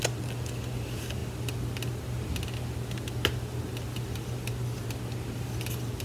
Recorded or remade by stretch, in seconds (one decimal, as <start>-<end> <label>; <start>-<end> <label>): 0.0-6.0 recorded